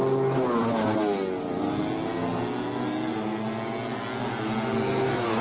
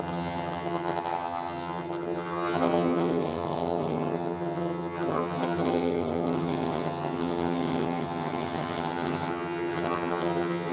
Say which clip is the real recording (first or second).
first